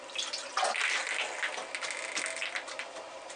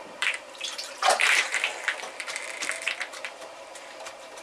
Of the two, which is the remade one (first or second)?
second